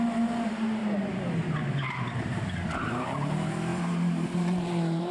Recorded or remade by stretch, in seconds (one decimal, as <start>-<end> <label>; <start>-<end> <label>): 0.0-0.8 remade; 0.8-2.2 recorded; 2.2-5.1 remade